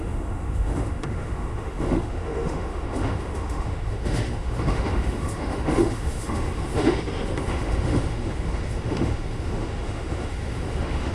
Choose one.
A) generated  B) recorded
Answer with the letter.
A